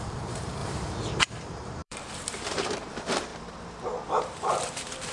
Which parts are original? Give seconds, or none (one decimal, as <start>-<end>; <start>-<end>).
3.3-4.2